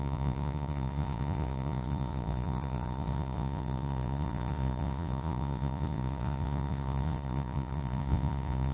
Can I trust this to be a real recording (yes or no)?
no